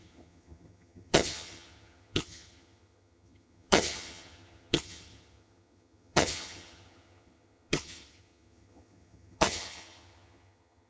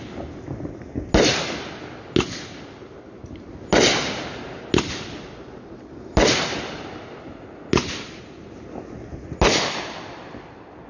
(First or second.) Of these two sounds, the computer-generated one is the first